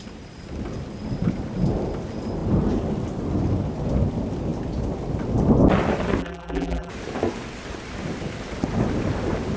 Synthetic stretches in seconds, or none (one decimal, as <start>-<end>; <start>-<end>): 6.2-6.9